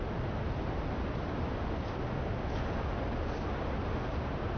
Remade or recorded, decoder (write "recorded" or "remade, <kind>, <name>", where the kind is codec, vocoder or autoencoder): recorded